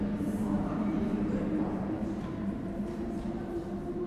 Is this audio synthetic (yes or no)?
yes